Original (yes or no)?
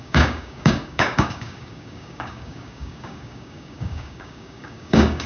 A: no